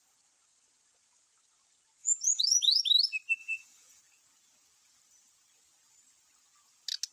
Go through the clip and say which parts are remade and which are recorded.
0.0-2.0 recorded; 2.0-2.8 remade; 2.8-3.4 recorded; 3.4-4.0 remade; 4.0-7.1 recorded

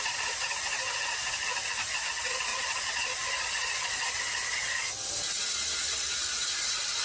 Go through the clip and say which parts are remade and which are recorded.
0.0-2.5 recorded; 2.5-4.2 remade; 4.2-7.0 recorded

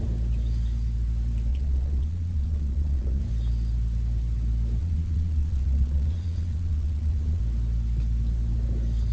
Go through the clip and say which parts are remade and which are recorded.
0.0-1.5 recorded; 1.5-3.2 remade; 3.2-4.8 recorded; 4.8-7.4 remade; 7.4-9.1 recorded

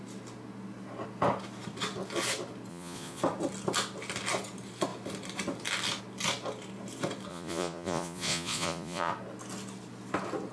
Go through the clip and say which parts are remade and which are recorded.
0.0-2.7 recorded; 2.7-3.2 remade; 3.2-7.3 recorded; 7.3-9.1 remade; 9.1-10.5 recorded